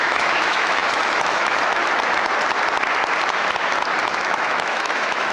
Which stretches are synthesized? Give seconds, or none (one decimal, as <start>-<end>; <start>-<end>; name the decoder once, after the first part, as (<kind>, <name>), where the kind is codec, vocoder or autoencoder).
0.0-1.8 (autoencoder, DAC-VAE); 4.0-5.3